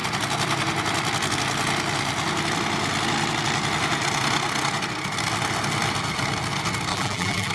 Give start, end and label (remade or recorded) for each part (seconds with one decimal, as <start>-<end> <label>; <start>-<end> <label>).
0.0-6.9 recorded; 6.9-7.5 remade